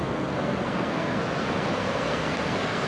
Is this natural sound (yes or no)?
no